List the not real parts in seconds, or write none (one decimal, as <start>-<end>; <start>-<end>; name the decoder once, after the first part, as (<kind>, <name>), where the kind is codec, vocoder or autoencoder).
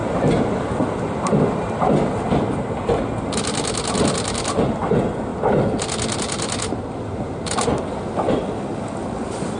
none